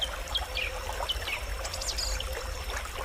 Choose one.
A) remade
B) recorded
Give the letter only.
B